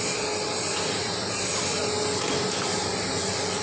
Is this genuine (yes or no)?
yes